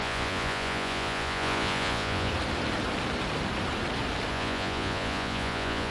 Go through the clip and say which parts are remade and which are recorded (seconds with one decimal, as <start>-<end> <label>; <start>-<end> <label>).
0.0-2.3 remade; 2.3-4.3 recorded; 4.3-5.9 remade